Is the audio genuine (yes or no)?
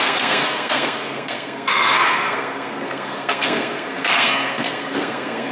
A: no